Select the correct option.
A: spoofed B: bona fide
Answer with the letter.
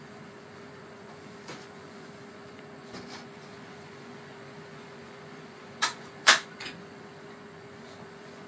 A